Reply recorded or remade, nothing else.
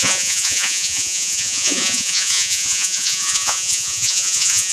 remade